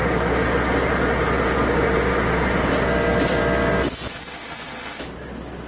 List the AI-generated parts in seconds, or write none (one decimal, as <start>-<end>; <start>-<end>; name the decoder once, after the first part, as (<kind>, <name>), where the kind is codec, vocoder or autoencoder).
none